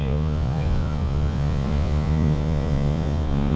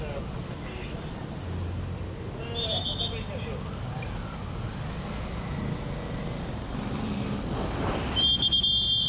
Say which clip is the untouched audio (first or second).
second